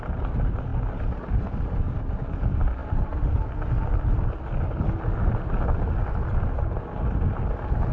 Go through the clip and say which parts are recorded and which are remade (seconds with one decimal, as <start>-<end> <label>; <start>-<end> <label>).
0.0-0.7 recorded; 0.7-1.3 remade; 1.3-7.9 recorded